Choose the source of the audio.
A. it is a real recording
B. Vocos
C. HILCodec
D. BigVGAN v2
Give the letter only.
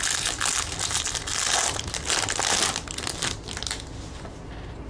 A